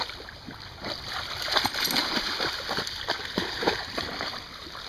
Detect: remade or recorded recorded